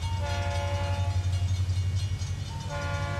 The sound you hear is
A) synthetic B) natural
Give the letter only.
B